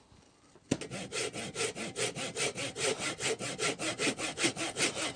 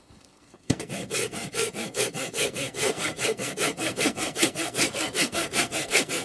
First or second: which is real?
first